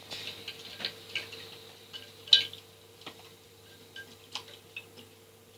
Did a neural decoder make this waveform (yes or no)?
no